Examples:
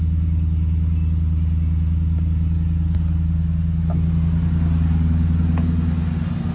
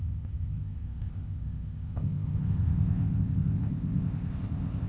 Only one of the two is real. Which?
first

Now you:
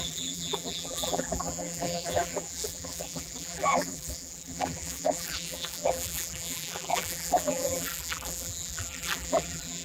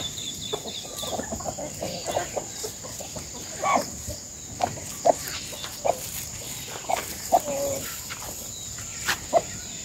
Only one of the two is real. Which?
second